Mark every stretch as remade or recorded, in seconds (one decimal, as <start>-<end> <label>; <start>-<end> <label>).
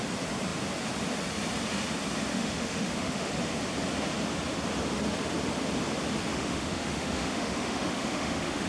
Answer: 0.0-2.3 recorded; 2.3-3.3 remade; 3.3-6.3 recorded; 6.3-8.7 remade